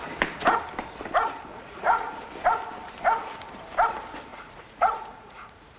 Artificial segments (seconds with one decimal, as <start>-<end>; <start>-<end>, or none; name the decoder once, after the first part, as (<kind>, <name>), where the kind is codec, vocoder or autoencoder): 1.5-2.2 (vocoder, Vocos); 4.3-5.8